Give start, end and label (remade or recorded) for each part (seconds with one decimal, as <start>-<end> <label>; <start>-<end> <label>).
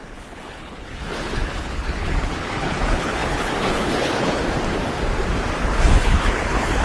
0.0-4.4 remade; 4.4-5.6 recorded; 5.6-6.8 remade